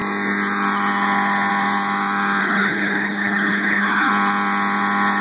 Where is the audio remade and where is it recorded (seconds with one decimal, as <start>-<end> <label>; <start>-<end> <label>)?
0.0-2.4 recorded; 2.4-4.1 remade; 4.1-5.2 recorded